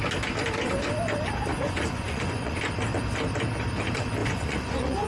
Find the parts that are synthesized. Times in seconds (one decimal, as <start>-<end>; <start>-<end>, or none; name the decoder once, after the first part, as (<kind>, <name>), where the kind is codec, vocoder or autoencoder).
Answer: 1.5-2.6 (vocoder, Vocos); 4.2-5.1